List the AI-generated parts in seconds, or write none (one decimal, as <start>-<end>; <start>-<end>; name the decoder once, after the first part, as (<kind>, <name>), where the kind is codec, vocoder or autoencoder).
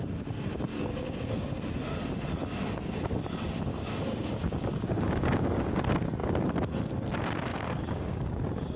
0.7-1.6 (codec, DAC); 3.7-5.8; 7.5-8.3